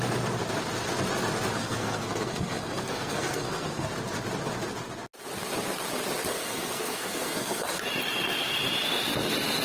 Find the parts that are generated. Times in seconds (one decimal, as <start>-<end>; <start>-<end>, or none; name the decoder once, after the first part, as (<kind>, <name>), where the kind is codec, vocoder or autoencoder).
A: 1.6-3.9 (codec, SNAC); 6.3-7.8